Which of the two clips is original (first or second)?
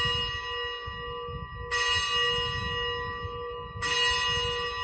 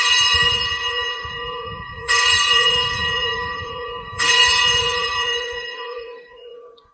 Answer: first